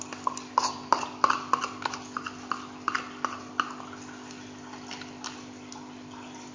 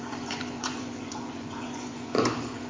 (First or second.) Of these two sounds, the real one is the first